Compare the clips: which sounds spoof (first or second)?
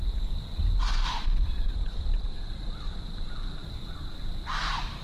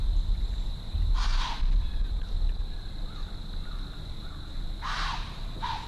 first